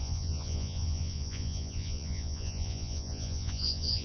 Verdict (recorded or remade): remade